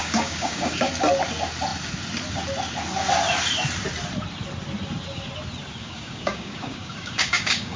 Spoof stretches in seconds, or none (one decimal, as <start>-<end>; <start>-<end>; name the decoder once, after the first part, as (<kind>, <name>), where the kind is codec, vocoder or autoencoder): 0.0-0.9 (codec, DAC); 5.8-7.8